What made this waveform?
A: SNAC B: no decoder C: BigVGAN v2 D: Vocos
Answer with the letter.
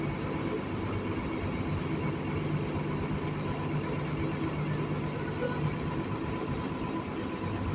B